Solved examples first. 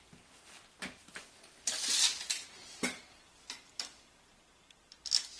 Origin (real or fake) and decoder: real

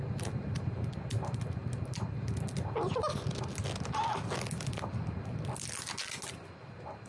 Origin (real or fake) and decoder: real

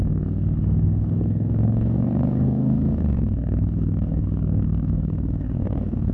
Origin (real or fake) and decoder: fake, codec, DAC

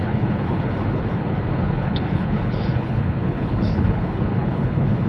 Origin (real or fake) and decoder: fake, codec, HILCodec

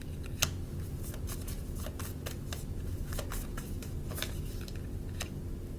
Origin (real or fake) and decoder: real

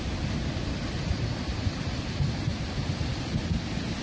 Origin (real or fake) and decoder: real